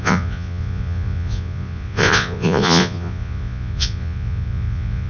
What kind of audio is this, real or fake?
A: fake